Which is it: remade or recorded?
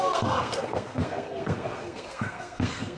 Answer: remade